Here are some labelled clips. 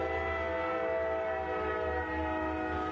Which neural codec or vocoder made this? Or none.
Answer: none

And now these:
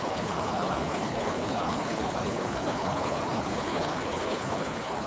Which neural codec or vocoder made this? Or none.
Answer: codec, HILCodec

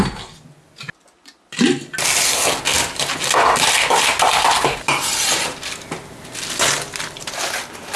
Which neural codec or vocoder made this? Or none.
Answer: none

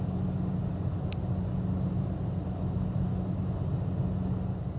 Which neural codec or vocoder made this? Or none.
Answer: none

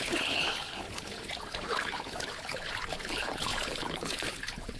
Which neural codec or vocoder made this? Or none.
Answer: codec, HILCodec